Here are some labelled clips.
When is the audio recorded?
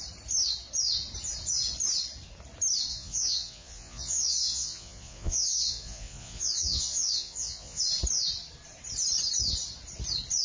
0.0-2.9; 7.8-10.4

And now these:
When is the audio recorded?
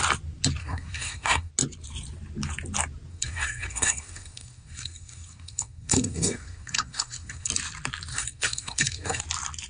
0.0-0.6; 1.5-3.1; 7.5-8.1; 9.2-9.7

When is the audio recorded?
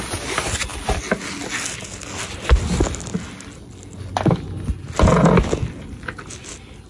0.0-6.9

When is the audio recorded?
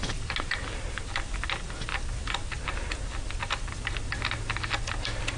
0.0-5.4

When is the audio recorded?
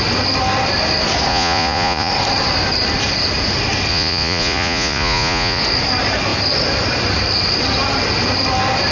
0.0-1.3; 2.1-3.9; 5.6-8.9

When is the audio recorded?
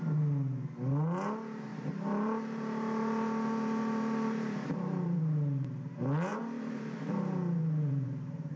0.0-1.7; 5.2-6.3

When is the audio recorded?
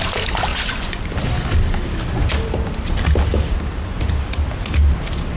0.0-0.5; 1.0-5.4